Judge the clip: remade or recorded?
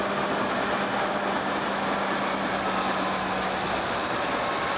recorded